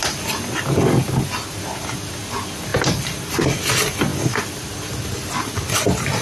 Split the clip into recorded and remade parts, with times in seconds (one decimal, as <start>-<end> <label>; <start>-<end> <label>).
0.0-6.2 recorded